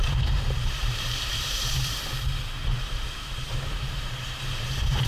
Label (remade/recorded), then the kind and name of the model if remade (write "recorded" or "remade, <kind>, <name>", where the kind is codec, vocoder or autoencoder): remade, vocoder, BigVGAN v2